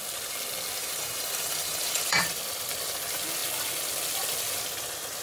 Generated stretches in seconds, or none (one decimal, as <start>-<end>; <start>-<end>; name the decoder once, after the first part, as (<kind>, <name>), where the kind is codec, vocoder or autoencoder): 0.8-2.4 (vocoder, BigVGAN v2)